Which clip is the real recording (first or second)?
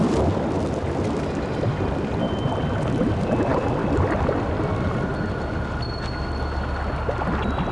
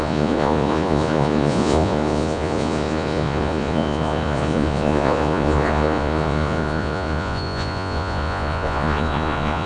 first